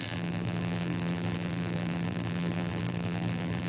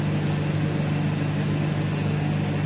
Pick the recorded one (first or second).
second